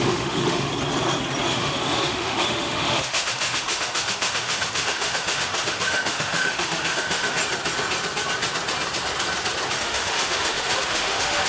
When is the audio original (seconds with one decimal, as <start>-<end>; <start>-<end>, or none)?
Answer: 0.7-1.5; 7.4-9.8